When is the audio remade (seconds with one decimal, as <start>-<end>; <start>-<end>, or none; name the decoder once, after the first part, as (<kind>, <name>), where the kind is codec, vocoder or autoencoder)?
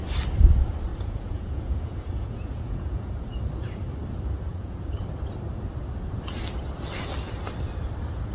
0.9-3.4 (vocoder, Vocos); 4.5-5.0